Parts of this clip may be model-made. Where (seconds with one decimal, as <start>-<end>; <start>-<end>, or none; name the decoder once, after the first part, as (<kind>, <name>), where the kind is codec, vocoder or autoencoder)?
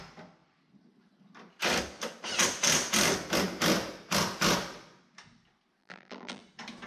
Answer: 5.8-6.4 (vocoder, BigVGAN v2)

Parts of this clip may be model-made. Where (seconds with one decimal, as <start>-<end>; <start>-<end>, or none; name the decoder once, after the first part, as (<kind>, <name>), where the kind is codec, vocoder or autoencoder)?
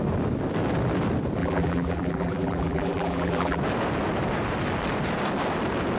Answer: 1.4-3.6 (vocoder, BigVGAN v2)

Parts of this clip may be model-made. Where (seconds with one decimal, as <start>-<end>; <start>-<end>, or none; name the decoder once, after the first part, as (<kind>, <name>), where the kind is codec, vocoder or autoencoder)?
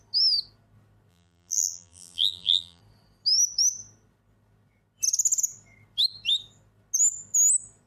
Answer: 1.1-2.8 (vocoder, BigVGAN v2)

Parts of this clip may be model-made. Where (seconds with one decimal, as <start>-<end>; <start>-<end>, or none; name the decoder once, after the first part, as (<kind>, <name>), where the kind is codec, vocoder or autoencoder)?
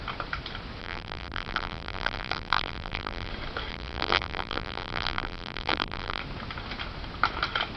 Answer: 0.8-3.3 (vocoder, BigVGAN v2); 3.7-6.2